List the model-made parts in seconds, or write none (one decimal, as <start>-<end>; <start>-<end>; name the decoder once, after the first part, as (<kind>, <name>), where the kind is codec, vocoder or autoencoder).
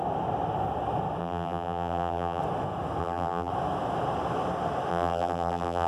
1.2-2.4 (vocoder, BigVGAN v2); 3.0-3.5; 4.9-5.9